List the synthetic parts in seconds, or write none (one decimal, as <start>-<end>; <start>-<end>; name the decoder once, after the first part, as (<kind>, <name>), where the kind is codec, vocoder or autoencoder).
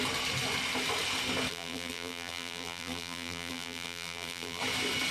1.5-4.6 (vocoder, BigVGAN v2)